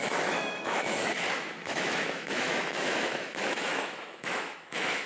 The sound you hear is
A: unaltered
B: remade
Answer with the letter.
B